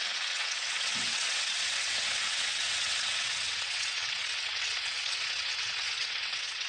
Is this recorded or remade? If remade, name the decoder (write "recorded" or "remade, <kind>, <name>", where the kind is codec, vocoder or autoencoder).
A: remade, vocoder, WaveNeXt